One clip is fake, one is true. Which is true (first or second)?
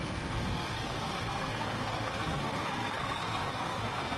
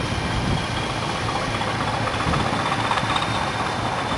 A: second